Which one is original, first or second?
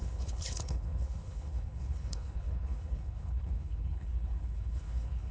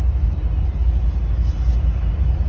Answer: second